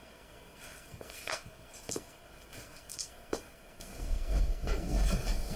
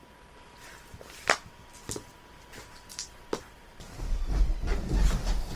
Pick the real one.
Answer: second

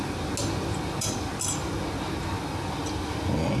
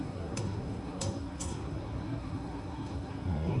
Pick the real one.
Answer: first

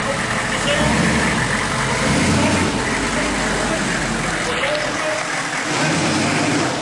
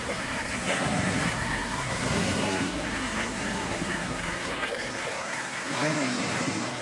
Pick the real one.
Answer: first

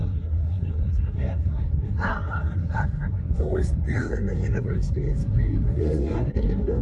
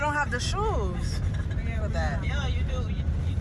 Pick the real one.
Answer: second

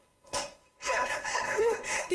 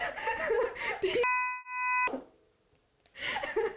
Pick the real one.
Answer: second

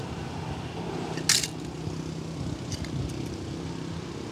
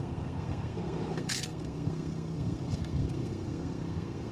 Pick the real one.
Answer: first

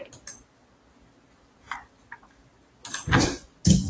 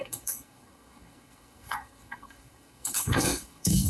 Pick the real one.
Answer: first